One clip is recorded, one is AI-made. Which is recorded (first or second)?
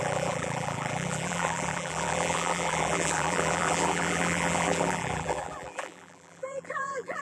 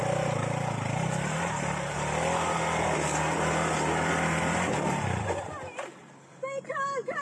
second